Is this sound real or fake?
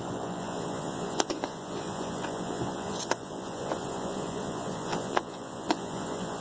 fake